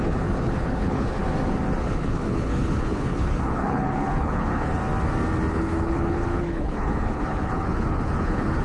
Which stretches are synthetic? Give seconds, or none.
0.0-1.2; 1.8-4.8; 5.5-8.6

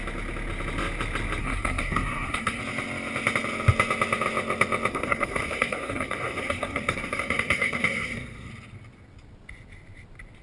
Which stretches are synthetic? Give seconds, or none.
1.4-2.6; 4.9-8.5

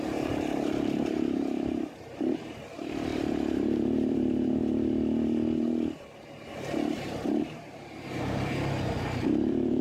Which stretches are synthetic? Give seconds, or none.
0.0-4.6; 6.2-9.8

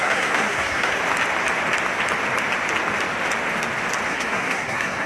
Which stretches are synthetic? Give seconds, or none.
0.0-1.0; 4.1-5.1

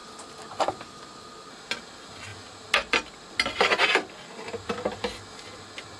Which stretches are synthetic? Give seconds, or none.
none

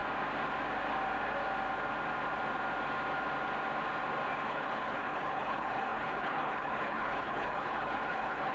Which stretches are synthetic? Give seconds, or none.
4.5-8.5